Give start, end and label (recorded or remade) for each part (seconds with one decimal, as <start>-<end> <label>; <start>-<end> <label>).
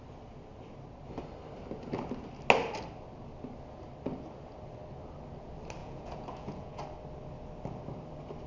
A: 0.0-5.8 recorded; 5.8-6.8 remade; 6.8-8.5 recorded